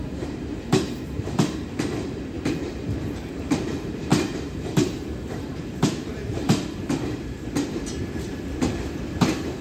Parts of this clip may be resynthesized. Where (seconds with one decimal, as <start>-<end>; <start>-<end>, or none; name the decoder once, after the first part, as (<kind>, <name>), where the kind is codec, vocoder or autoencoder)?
0.0-9.6 (vocoder, BigVGAN v2)